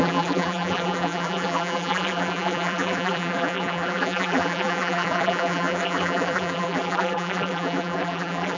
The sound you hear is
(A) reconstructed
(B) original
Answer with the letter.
A